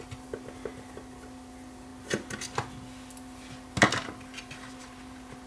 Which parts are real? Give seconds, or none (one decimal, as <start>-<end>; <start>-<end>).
0.0-5.5